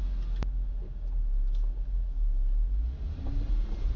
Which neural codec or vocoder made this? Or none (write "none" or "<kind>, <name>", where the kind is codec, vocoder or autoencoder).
none